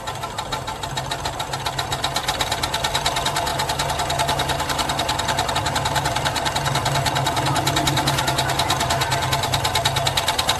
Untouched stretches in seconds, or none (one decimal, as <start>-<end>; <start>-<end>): 0.0-10.6